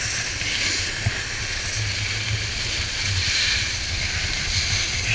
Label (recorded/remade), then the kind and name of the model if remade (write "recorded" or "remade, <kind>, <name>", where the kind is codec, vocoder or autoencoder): recorded